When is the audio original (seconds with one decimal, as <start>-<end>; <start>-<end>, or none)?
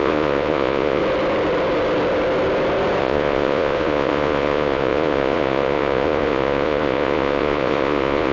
1.0-3.0